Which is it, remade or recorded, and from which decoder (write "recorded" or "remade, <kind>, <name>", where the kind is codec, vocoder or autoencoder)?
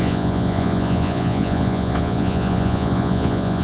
remade, vocoder, Vocos